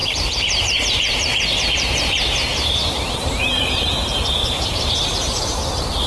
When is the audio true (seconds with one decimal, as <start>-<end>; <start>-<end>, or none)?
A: 3.4-4.4; 5.4-6.1